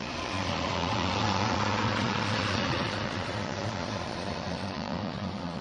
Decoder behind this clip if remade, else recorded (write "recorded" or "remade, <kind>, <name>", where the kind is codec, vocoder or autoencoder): remade, vocoder, Vocos